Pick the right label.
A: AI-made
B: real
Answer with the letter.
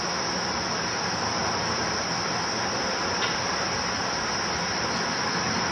B